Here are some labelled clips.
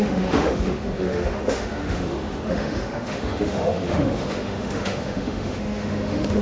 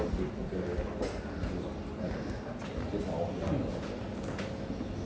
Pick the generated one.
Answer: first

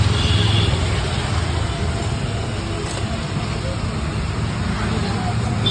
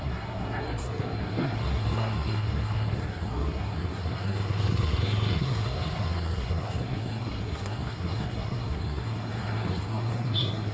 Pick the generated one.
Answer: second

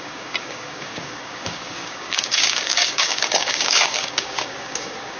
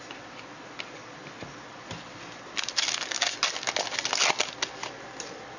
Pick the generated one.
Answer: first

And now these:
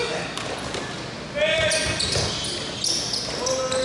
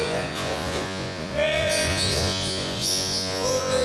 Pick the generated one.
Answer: second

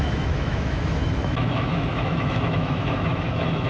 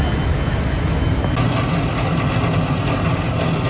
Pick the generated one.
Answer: first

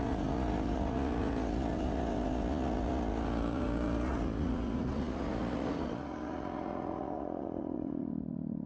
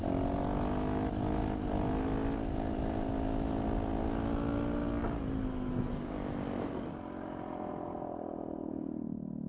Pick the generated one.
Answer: first